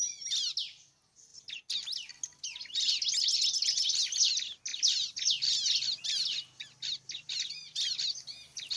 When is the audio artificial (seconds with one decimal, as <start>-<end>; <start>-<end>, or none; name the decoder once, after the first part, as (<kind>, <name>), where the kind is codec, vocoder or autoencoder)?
none